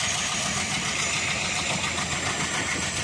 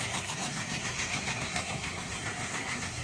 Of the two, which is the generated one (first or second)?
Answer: second